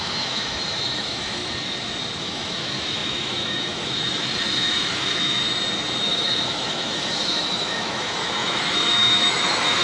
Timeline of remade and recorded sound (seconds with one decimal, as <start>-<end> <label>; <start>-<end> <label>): 0.0-1.4 remade; 1.4-2.2 recorded; 2.2-5.4 remade; 5.4-6.0 recorded; 6.0-9.8 remade